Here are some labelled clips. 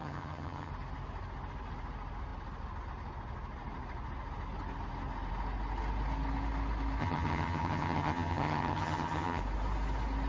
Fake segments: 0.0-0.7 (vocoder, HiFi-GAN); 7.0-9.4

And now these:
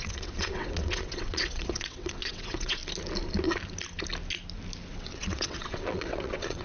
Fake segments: 0.0-2.8 (vocoder, WaveNeXt); 4.9-6.6

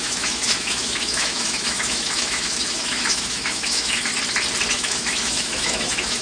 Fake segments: 0.0-4.1 (autoencoder, DAC-VAE); 4.7-6.2